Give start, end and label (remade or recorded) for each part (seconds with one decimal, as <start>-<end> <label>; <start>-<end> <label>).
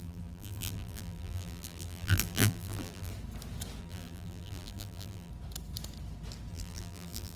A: 0.0-3.1 remade; 3.1-3.8 recorded; 3.8-5.3 remade; 5.3-6.5 recorded; 6.5-7.4 remade